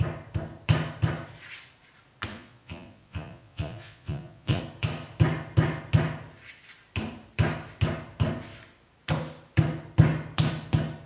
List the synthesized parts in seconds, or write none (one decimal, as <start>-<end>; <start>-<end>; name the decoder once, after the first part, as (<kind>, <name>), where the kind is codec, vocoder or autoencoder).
2.3-4.6 (vocoder, Vocos)